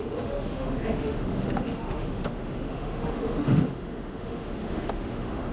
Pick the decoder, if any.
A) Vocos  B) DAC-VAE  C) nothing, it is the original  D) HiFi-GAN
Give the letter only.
B